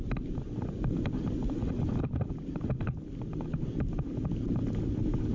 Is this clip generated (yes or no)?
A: no